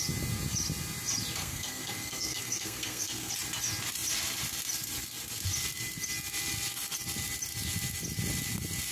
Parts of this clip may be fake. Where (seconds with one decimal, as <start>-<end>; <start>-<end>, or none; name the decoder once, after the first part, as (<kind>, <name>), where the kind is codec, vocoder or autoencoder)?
1.4-3.3 (codec, SNAC)

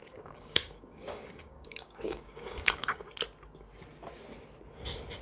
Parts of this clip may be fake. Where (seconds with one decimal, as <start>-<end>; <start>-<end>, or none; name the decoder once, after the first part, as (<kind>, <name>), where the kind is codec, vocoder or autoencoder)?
0.0-3.1 (codec, DAC)